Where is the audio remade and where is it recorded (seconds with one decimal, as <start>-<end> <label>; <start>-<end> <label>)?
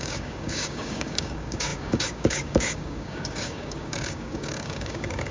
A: 0.0-5.3 remade